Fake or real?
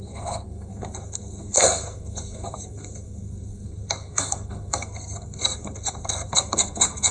fake